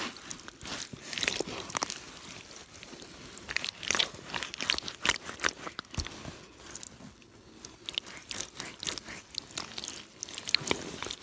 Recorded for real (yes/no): yes